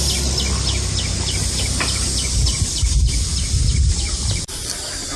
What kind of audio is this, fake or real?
real